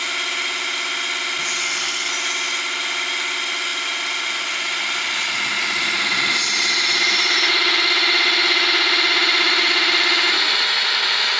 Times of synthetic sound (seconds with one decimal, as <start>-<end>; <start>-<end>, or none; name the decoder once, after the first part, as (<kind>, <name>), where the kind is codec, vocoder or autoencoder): 1.6-2.1 (codec, SNAC)